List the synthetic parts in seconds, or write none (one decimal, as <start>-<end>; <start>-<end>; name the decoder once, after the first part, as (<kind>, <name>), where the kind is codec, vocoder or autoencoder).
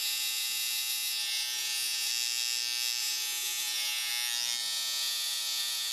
0.0-2.1 (vocoder, Vocos); 3.0-4.1; 4.6-5.9